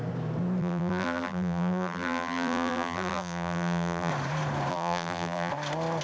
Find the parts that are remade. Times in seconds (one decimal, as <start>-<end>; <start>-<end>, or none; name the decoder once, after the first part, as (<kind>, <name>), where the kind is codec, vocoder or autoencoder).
0.6-4.1 (vocoder, BigVGAN v2); 4.7-5.5